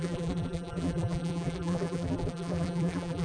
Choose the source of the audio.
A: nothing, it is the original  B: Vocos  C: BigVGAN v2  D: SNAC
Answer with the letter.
C